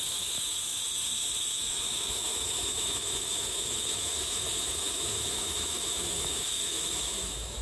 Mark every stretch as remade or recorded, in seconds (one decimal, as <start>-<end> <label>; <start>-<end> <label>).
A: 0.0-7.6 remade